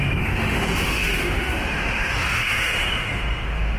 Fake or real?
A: fake